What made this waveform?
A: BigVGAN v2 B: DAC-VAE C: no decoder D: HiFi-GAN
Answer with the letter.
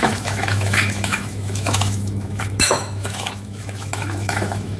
B